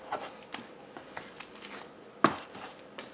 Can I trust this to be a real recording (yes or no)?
yes